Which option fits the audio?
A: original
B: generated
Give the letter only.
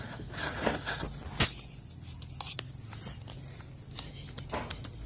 A